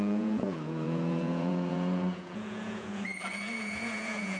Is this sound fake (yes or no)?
yes